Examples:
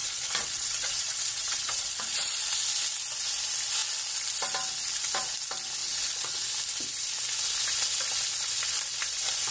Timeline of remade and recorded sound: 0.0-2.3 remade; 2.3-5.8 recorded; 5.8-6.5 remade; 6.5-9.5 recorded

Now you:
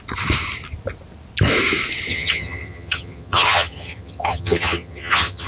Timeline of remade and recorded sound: 0.0-2.1 recorded; 2.1-5.5 remade

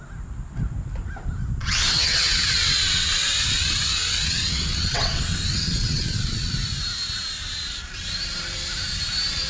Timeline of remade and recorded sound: 0.0-1.6 recorded; 1.6-6.5 remade; 6.5-9.5 recorded

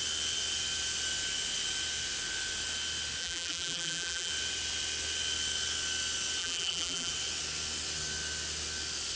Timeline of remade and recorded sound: 0.0-3.2 recorded; 3.2-4.3 remade; 4.3-6.4 recorded; 6.4-7.1 remade; 7.1-9.2 recorded

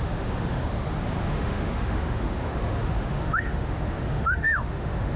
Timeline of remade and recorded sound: 0.0-0.6 remade; 0.6-1.2 recorded; 1.2-5.2 remade

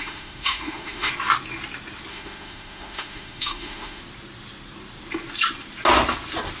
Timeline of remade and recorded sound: 0.0-1.1 remade; 1.1-2.1 recorded; 2.1-4.0 remade; 4.0-6.6 recorded

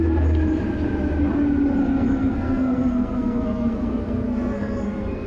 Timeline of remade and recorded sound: 0.0-1.8 recorded; 1.8-5.3 remade